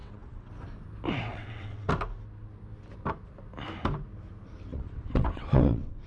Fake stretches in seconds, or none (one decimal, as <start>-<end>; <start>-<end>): 0.0-0.5; 1.3-1.9; 4.7-6.1